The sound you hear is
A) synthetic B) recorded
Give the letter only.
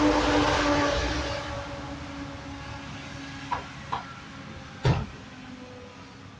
B